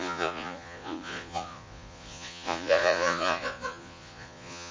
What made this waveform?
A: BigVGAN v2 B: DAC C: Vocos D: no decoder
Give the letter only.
C